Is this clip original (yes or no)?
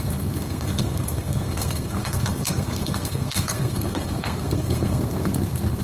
no